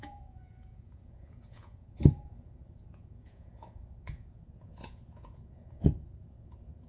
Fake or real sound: fake